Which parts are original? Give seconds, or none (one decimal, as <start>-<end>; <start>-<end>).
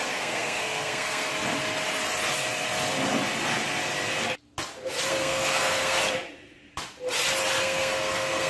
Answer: 1.3-5.1; 6.0-7.6